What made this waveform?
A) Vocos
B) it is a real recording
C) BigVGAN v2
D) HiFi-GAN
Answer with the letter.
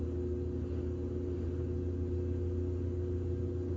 B